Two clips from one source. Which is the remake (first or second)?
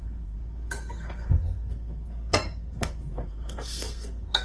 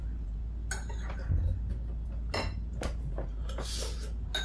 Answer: first